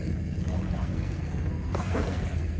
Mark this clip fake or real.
fake